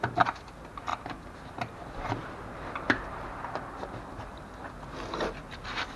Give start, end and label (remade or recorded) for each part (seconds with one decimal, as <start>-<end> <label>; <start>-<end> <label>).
0.0-6.0 recorded